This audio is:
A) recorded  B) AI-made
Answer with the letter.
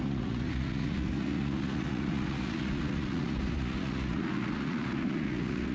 B